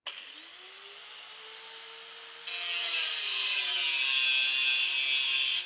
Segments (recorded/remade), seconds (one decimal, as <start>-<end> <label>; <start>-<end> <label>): 0.0-2.8 recorded; 2.8-3.6 remade; 3.6-5.7 recorded